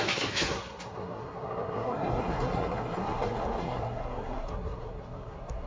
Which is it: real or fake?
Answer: fake